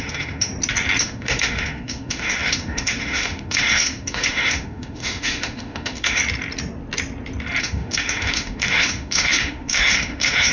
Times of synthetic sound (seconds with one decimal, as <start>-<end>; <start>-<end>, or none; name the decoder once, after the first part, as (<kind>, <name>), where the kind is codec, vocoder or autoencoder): 0.0-0.5 (autoencoder, DAC-VAE); 1.0-6.2; 7.6-10.5